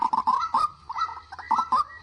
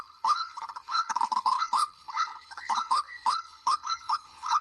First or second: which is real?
first